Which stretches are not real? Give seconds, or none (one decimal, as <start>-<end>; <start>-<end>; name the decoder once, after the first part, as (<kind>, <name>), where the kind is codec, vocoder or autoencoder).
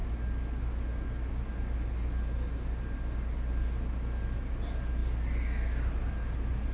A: none